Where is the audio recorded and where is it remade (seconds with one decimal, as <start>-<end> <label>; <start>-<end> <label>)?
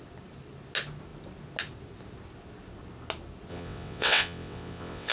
0.0-3.5 recorded; 3.5-5.1 remade